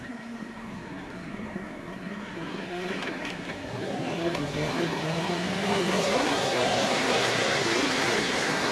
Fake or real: fake